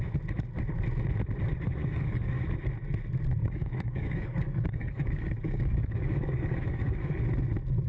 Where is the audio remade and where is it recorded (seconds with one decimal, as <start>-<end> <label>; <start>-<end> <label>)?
0.0-1.8 recorded; 1.8-2.4 remade; 2.4-3.4 recorded; 3.4-7.2 remade; 7.2-7.9 recorded